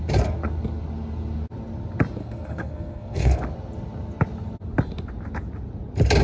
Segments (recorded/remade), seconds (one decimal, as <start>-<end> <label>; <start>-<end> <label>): 0.0-2.2 recorded; 2.2-3.4 remade; 3.4-6.2 recorded